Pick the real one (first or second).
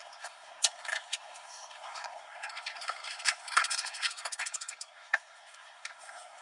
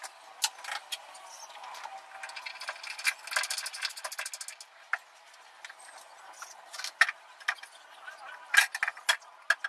second